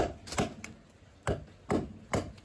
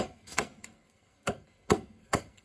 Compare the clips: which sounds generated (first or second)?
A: second